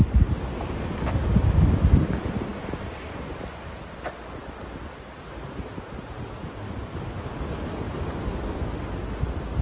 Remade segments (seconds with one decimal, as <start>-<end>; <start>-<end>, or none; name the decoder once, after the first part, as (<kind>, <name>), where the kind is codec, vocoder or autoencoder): none